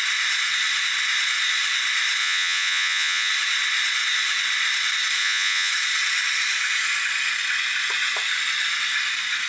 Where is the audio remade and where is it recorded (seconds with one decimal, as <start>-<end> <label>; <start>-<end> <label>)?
0.0-2.2 recorded; 2.2-3.3 remade; 3.3-5.2 recorded; 5.2-5.7 remade; 5.7-9.5 recorded